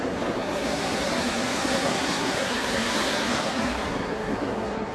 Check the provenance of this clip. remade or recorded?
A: remade